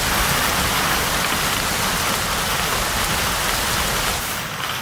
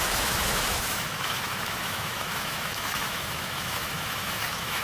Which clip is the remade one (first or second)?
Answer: second